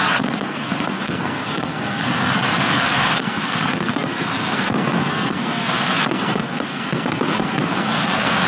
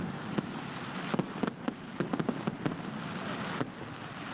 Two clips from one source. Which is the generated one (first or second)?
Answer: first